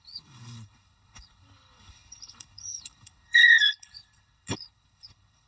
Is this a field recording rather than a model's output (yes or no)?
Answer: no